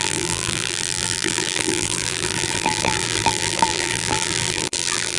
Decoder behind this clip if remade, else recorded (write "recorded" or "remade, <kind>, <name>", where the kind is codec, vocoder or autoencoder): remade, vocoder, BigVGAN v2